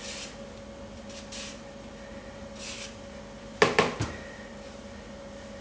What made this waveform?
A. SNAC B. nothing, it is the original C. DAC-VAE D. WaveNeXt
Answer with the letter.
B